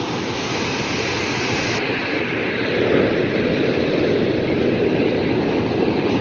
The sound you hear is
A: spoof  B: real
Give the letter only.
B